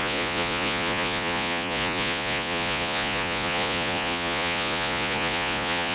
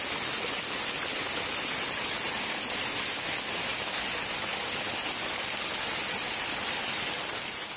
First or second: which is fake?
first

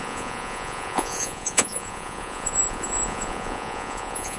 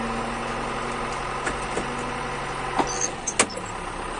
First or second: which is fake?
first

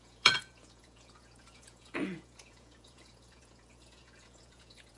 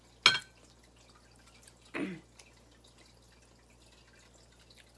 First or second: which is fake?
first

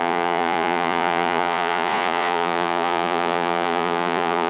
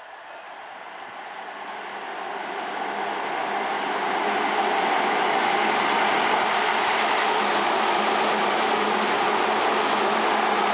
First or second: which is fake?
first